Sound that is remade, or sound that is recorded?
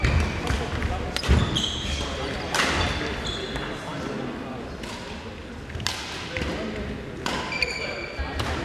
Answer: recorded